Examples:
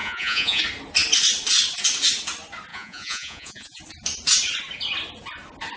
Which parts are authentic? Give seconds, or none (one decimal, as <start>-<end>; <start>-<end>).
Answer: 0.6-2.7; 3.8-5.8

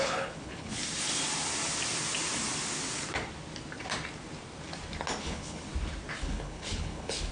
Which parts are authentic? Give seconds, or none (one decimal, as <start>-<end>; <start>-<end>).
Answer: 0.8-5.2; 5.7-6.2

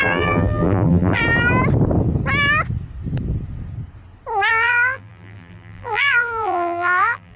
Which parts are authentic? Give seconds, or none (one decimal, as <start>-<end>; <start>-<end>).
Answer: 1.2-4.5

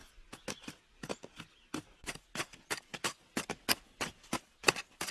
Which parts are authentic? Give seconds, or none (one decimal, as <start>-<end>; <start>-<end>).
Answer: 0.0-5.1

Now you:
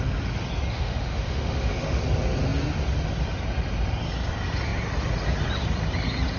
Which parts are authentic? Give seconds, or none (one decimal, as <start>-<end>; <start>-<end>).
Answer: 0.0-0.7; 2.0-6.4

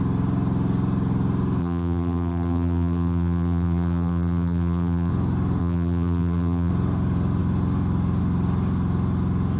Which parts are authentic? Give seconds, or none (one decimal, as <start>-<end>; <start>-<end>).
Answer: 0.0-1.6; 5.1-5.6; 6.7-9.6